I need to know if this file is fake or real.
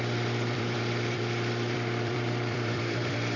fake